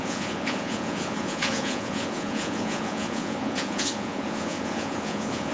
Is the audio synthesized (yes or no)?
yes